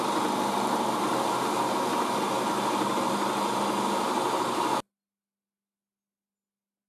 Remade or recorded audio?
recorded